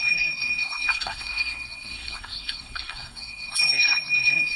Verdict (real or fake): fake